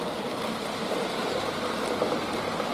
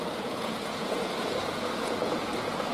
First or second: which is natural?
first